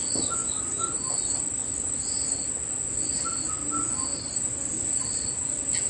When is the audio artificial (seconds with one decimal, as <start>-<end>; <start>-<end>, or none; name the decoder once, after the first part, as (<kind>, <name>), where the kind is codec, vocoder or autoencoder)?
0.4-1.1 (vocoder, BigVGAN v2); 4.1-5.3